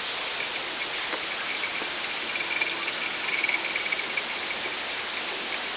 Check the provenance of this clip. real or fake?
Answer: real